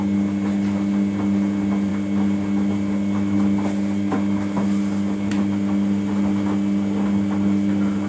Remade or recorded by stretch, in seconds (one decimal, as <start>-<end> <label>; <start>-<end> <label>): 0.0-8.1 recorded